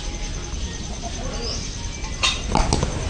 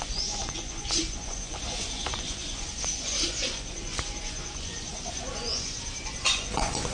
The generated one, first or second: second